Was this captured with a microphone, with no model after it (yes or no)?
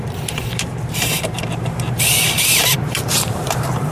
no